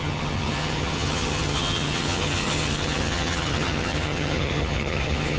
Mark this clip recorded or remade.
remade